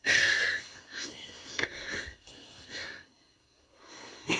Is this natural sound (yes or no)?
no